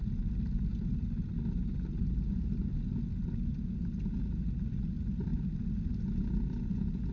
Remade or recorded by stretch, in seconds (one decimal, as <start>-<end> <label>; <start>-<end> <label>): 0.0-7.1 recorded